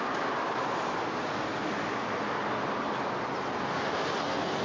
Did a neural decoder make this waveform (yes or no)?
no